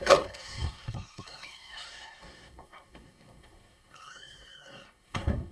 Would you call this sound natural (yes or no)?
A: no